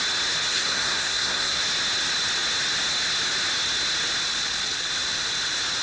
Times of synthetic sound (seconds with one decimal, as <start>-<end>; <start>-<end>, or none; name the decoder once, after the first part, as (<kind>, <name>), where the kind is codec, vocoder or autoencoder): 0.5-1.6 (codec, SNAC)